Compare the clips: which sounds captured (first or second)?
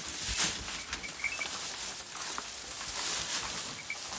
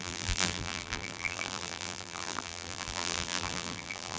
first